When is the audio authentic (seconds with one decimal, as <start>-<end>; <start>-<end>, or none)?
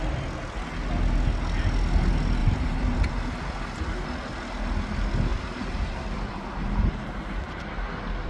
0.0-2.4; 3.1-5.3; 7.7-8.3